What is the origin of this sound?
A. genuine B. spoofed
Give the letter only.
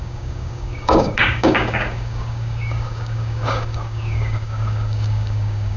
B